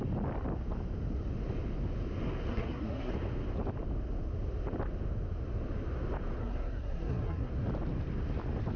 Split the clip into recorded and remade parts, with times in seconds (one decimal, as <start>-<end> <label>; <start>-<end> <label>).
0.0-2.5 recorded; 2.5-3.1 remade; 3.1-6.4 recorded; 6.4-7.5 remade; 7.5-8.8 recorded